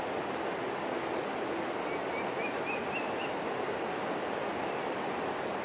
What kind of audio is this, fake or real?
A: real